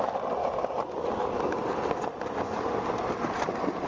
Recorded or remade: recorded